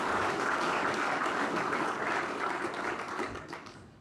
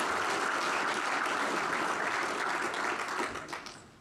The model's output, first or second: first